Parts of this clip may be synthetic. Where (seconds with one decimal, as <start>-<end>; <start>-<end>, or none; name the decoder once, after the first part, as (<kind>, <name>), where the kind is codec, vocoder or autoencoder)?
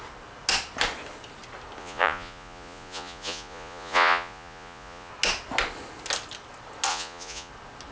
1.8-5.1 (vocoder, Vocos); 6.9-7.5